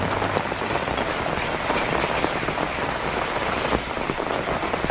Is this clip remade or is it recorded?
recorded